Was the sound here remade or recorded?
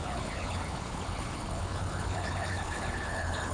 remade